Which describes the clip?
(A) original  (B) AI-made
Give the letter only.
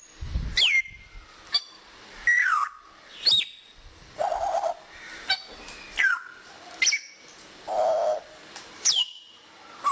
A